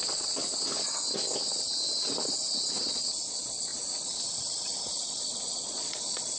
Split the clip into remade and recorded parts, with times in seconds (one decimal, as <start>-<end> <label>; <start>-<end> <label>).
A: 0.0-0.4 remade; 0.4-2.8 recorded; 2.8-3.7 remade; 3.7-4.6 recorded; 4.6-6.4 remade